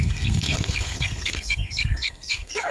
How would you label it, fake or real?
fake